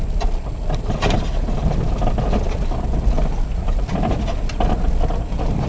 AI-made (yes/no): no